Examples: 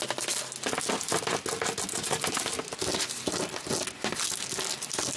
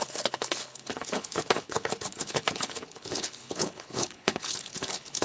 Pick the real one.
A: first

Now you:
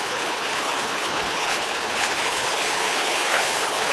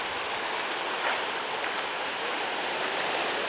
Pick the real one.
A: second